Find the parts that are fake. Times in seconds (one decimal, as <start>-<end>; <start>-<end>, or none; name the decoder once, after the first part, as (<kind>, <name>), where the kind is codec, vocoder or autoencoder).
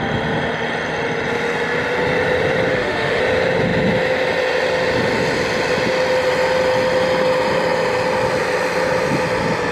2.7-3.2 (autoencoder, DAC-VAE)